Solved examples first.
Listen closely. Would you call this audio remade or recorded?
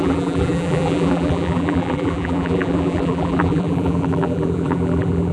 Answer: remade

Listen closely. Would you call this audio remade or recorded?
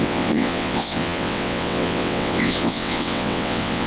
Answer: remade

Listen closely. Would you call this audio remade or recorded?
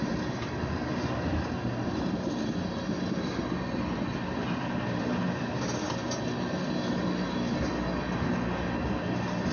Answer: recorded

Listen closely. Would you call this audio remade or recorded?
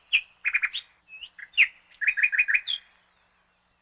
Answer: recorded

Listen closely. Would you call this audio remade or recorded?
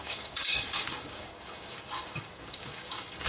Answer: remade